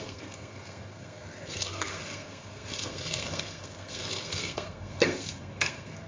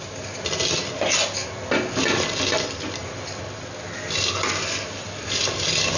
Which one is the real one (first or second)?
second